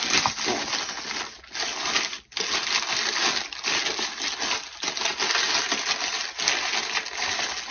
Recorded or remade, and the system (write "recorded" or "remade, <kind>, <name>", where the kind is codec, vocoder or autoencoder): recorded